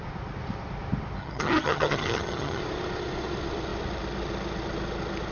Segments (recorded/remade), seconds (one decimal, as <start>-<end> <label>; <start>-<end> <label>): 0.0-1.2 recorded; 1.2-2.6 remade; 2.6-5.3 recorded

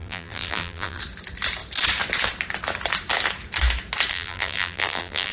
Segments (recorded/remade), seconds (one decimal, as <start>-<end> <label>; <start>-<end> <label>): 0.0-1.0 remade; 1.0-4.1 recorded; 4.1-5.3 remade

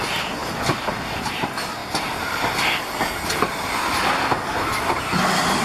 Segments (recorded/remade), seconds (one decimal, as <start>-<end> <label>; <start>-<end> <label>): 0.0-5.6 recorded

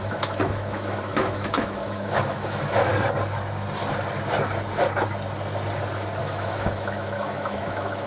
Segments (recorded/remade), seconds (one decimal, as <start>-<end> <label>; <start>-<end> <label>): 0.0-2.9 remade; 2.9-6.2 recorded; 6.2-8.1 remade

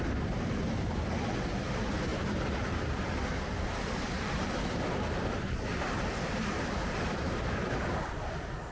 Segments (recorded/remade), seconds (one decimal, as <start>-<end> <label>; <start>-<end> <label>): 0.0-2.1 recorded; 2.1-7.3 remade; 7.3-8.7 recorded